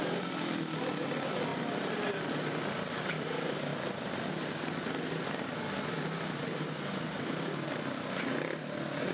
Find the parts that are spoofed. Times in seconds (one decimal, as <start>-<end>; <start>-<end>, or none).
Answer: none